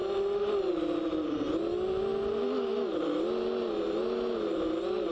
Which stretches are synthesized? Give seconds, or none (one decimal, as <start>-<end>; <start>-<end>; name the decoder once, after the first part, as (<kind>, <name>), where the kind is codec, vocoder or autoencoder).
none